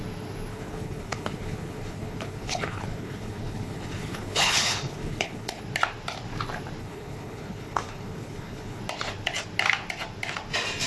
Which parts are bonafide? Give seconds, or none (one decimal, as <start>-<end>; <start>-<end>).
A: 0.0-0.5; 5.6-6.8; 8.8-10.9